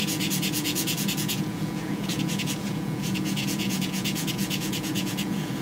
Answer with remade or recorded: remade